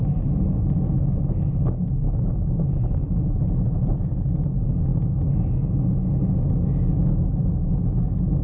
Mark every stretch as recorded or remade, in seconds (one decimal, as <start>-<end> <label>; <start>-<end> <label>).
0.0-8.4 recorded